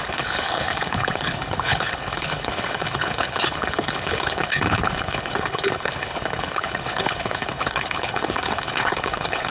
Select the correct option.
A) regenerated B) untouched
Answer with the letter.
A